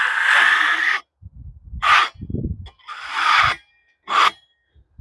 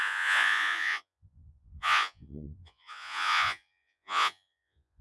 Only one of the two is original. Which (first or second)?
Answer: first